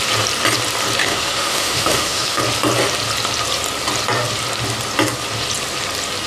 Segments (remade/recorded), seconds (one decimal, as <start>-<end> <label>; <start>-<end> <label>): 0.0-1.0 recorded; 1.0-2.4 remade; 2.4-6.3 recorded